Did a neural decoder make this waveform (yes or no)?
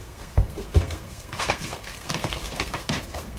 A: yes